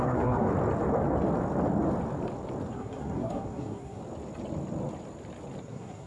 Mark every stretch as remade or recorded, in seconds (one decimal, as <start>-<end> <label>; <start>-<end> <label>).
0.0-0.5 remade; 0.5-2.7 recorded; 2.7-4.0 remade; 4.0-5.6 recorded; 5.6-6.1 remade